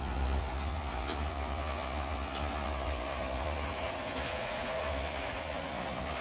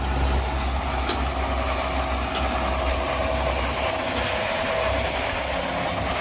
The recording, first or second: second